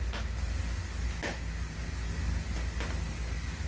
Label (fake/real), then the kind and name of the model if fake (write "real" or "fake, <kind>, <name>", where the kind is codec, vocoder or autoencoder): real